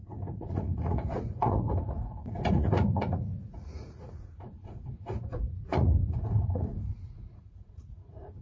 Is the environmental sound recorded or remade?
remade